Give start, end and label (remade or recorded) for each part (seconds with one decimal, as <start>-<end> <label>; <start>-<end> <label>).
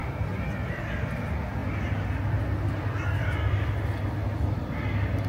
0.0-5.3 recorded